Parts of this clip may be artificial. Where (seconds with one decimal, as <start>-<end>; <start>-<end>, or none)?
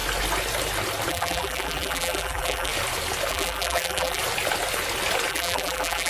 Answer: 1.1-2.7; 3.3-4.2; 5.3-6.1